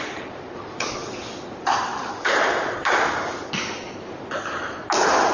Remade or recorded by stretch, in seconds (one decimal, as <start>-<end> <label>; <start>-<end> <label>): 0.0-5.3 recorded